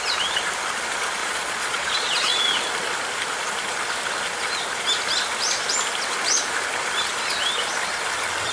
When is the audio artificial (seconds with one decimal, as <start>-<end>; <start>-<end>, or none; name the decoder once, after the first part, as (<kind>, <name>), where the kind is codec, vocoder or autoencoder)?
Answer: 1.2-2.4 (vocoder, Vocos)